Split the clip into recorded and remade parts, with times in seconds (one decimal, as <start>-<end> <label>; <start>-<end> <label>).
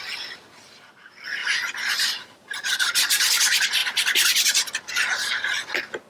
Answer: 0.0-1.4 recorded; 1.4-3.3 remade; 3.3-6.1 recorded